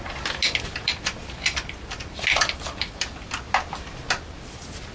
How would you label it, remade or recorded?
recorded